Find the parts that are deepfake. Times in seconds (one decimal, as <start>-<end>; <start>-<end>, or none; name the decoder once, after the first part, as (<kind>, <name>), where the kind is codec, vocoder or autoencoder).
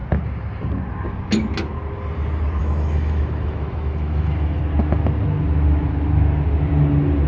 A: 2.6-4.6 (autoencoder, DAC-VAE)